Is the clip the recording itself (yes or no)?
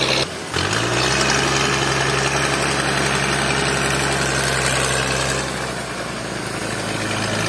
yes